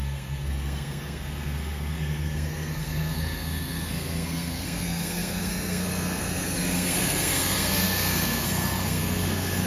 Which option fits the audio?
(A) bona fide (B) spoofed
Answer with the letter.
B